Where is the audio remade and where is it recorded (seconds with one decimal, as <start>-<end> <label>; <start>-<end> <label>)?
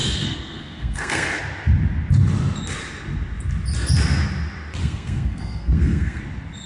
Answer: 0.0-1.4 remade; 1.4-4.8 recorded; 4.8-6.2 remade; 6.2-6.7 recorded